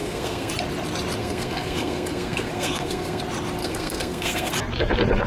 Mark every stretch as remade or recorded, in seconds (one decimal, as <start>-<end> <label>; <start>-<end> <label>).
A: 0.0-0.5 remade; 0.5-1.2 recorded; 1.2-3.2 remade; 3.2-3.6 recorded; 3.6-4.5 remade; 4.5-5.3 recorded